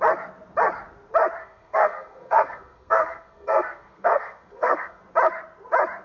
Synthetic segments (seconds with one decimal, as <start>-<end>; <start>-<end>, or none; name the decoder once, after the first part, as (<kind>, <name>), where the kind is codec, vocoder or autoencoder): 1.4-5.0 (codec, SNAC)